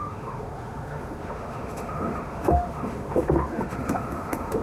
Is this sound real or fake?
fake